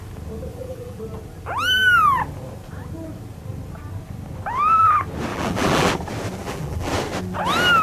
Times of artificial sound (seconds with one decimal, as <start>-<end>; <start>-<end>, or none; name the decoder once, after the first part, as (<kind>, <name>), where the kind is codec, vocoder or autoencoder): 0.5-1.0 (vocoder, BigVGAN v2); 5.3-5.9; 6.4-6.9